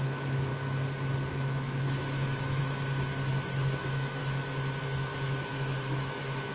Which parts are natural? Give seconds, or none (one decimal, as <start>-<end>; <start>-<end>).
0.5-1.3; 2.6-3.3; 4.2-4.8

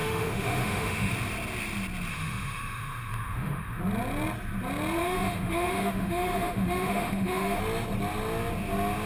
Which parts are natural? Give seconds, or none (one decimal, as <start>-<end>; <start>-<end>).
1.1-2.1; 3.8-5.0; 7.6-9.1

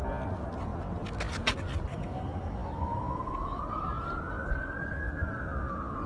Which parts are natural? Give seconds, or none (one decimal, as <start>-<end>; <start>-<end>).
0.0-1.9; 3.6-6.1

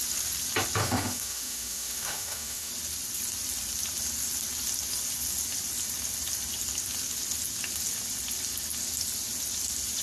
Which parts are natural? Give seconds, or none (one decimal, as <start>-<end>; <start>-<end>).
0.0-0.8; 2.7-10.0

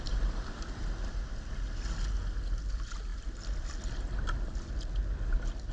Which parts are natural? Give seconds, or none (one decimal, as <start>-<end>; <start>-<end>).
0.0-5.7